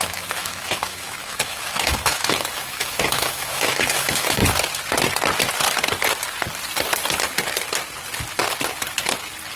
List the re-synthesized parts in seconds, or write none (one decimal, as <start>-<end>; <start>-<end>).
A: 0.0-4.4